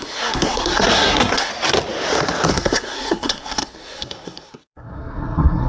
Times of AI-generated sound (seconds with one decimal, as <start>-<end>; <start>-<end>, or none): 0.0-1.5; 2.5-5.7